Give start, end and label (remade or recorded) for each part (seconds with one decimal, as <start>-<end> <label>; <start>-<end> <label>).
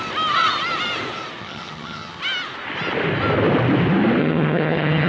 0.0-1.4 recorded; 1.4-2.2 remade; 2.2-4.2 recorded; 4.2-5.1 remade